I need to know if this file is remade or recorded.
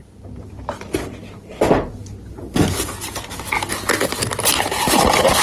recorded